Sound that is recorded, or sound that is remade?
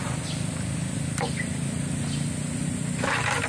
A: recorded